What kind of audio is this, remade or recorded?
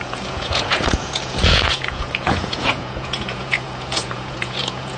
remade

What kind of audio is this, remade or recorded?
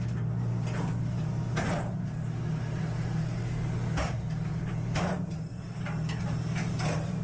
recorded